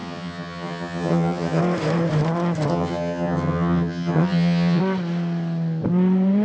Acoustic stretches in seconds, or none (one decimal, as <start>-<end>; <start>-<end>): 1.6-2.7; 4.8-6.4